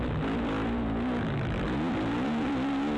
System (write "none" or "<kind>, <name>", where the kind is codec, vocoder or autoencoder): none